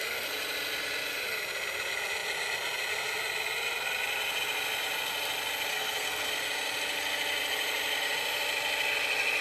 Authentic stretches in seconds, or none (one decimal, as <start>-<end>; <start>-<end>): 0.0-5.7; 6.3-9.4